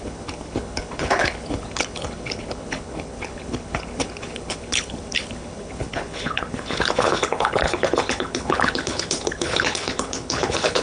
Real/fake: fake